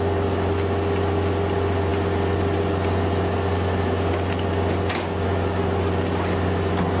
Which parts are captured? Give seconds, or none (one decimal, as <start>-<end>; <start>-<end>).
0.0-7.0